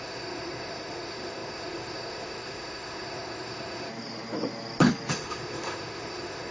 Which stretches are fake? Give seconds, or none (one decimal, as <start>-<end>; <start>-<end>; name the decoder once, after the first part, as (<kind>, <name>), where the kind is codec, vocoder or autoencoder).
0.0-3.9 (autoencoder, DAC-VAE); 5.1-6.5